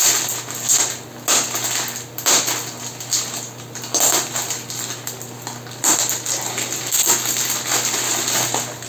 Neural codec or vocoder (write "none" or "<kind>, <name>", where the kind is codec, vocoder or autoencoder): none